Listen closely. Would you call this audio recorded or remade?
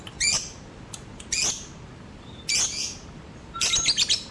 recorded